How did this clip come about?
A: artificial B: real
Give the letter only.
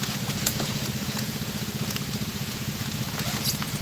A